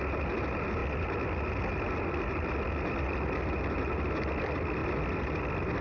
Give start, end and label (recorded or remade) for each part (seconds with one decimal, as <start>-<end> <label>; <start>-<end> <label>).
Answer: 0.0-5.8 recorded